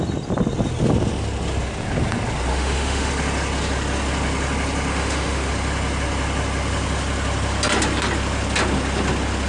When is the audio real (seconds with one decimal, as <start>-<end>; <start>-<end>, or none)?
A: 0.0-2.5; 3.1-4.9; 5.5-9.5